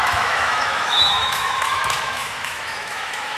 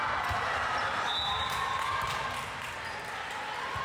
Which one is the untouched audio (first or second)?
second